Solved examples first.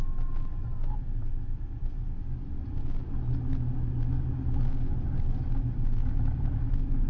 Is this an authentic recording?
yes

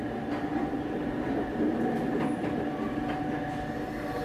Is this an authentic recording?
yes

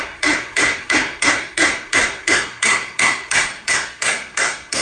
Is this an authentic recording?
no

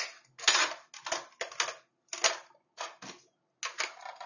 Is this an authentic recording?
yes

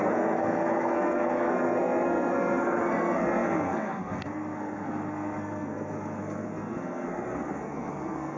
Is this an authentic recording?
no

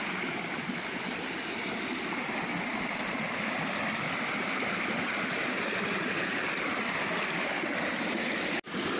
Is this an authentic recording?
yes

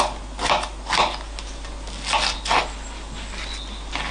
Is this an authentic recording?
yes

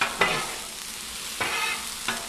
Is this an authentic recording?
yes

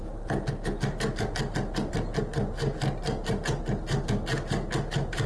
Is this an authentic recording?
yes